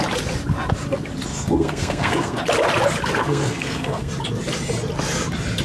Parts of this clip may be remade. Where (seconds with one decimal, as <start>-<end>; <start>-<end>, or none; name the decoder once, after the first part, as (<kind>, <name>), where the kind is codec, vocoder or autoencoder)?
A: 1.3-2.4 (codec, SNAC); 3.2-4.1